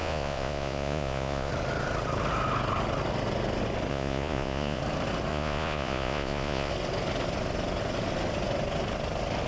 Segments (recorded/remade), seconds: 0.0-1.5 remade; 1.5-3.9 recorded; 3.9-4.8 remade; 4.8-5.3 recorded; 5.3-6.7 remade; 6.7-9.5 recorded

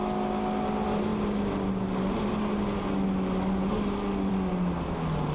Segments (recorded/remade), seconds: 0.0-5.3 recorded

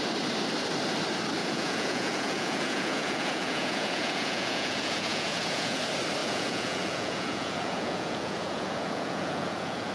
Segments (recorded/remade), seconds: 0.0-1.4 recorded; 1.4-5.8 remade; 5.8-6.2 recorded; 6.2-9.9 remade

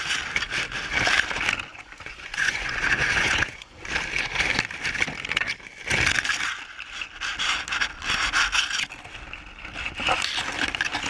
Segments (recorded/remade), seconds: 0.0-1.7 recorded; 1.7-3.8 remade; 3.8-11.1 recorded